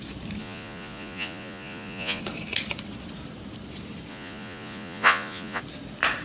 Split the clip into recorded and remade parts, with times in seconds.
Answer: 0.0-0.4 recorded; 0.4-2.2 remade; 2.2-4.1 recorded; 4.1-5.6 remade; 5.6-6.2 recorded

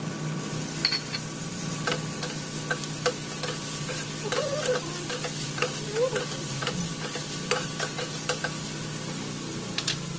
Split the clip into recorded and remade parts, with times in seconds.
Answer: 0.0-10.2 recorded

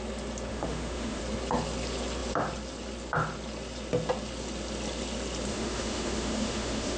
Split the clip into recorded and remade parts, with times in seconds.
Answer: 0.0-0.5 recorded; 0.5-1.2 remade; 1.2-5.5 recorded; 5.5-7.0 remade

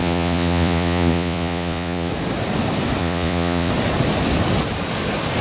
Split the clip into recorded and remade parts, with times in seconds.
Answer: 0.0-2.1 remade; 2.1-3.0 recorded; 3.0-3.7 remade; 3.7-5.4 recorded

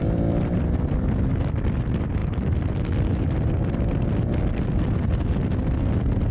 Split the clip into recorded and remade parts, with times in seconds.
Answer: 0.0-6.3 remade